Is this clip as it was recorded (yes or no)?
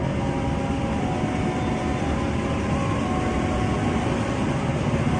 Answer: yes